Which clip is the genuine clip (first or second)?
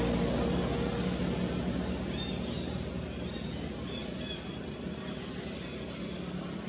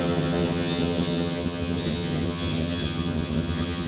first